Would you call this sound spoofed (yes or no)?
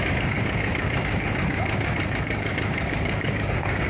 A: yes